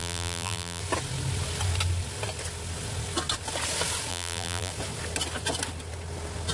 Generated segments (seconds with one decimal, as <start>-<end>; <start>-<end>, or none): 0.0-0.8; 4.1-4.7